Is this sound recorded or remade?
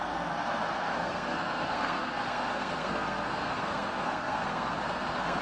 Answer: remade